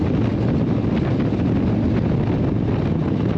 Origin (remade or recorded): recorded